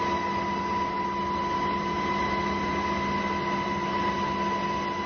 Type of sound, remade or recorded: recorded